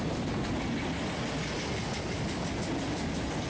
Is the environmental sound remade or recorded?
recorded